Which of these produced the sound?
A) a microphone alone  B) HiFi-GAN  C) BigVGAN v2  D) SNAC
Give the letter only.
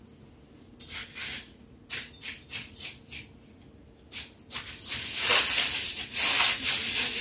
A